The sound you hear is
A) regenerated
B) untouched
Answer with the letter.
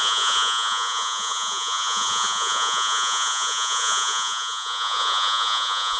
A